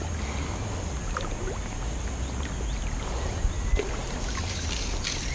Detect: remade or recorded recorded